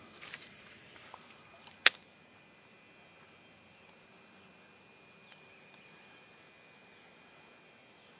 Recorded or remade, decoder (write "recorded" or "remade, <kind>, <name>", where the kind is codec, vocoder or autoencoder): recorded